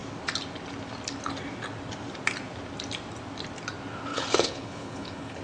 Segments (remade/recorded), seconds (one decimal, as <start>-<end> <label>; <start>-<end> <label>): 0.0-4.1 recorded; 4.1-5.4 remade

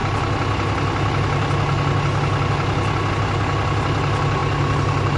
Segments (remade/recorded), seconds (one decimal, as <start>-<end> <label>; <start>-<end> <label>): 0.0-5.2 recorded

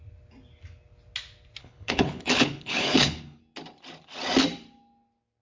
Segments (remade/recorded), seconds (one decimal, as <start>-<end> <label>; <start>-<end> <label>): 0.0-1.6 recorded; 1.6-3.4 remade; 3.4-5.4 recorded

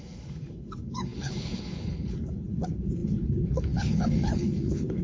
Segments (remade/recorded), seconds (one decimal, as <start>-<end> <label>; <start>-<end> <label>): 0.0-5.0 remade

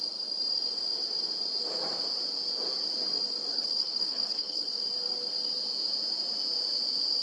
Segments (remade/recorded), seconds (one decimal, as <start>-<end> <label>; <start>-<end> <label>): 0.0-3.5 recorded; 3.5-4.8 remade; 4.8-7.2 recorded